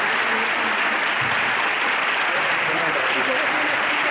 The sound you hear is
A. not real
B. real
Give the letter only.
B